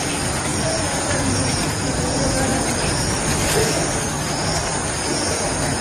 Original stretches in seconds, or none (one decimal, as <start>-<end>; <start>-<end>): 0.0-0.5; 1.9-5.8